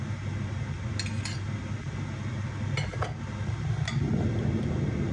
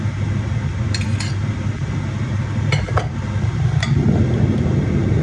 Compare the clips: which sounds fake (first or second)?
second